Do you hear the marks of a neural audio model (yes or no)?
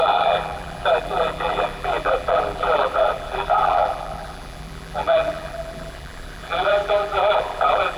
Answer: yes